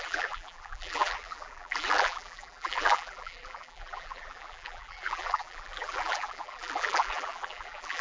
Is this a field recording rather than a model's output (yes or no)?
no